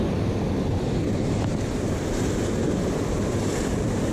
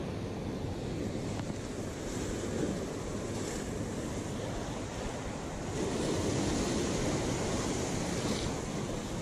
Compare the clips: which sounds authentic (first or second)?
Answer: second